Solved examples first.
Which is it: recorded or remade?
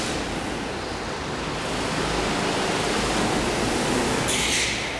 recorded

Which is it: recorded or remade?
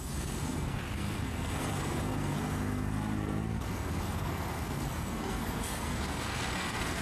remade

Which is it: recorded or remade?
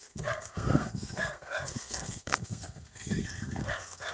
remade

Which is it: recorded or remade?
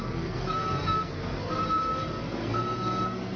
remade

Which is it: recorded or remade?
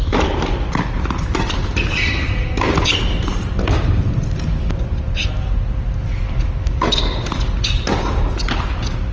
recorded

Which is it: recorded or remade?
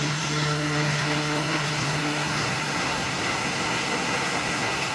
remade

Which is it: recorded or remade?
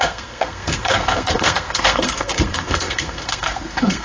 remade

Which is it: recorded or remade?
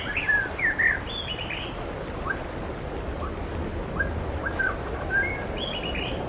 recorded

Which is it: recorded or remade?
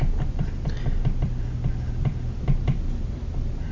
recorded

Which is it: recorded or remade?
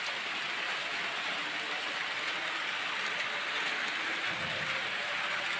recorded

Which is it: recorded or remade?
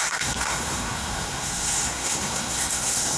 remade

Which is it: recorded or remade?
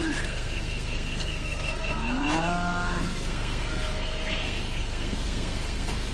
remade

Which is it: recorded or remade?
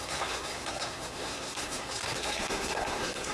remade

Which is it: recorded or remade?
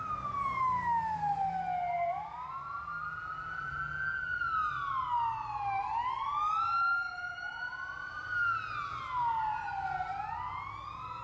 recorded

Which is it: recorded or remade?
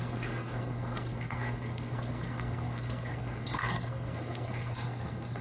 remade